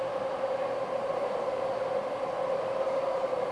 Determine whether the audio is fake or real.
real